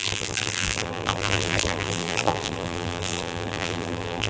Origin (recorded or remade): remade